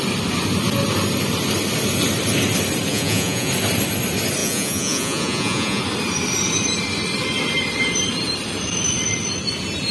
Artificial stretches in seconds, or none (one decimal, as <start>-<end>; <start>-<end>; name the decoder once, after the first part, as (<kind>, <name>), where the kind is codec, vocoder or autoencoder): 2.9-3.5 (vocoder, Vocos); 4.4-5.8